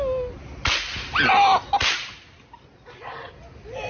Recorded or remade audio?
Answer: recorded